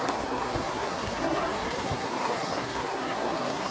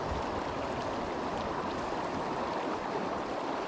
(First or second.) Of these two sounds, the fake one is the first